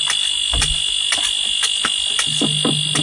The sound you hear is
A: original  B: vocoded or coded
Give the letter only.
A